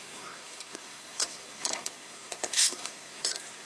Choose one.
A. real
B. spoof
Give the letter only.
B